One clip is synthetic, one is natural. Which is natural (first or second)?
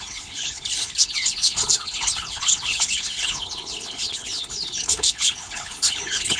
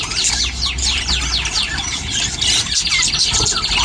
second